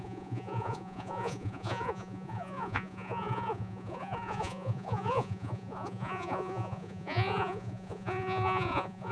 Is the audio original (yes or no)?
no